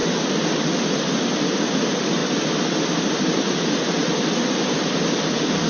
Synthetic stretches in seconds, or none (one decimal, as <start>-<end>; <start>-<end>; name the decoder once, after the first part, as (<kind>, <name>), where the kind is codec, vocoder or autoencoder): none